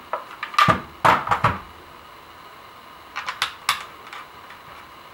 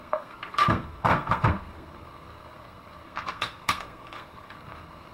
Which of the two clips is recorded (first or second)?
first